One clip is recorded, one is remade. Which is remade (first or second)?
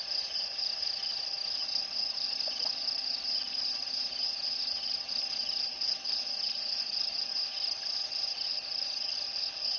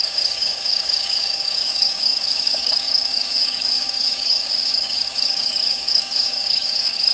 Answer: second